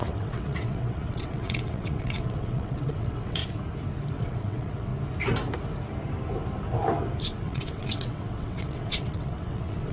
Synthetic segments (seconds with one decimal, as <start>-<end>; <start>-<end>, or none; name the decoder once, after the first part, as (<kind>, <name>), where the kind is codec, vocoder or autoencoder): 0.0-3.4 (vocoder, WaveNeXt); 4.2-4.9; 7.2-9.9